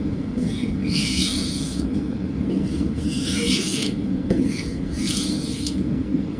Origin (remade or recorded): remade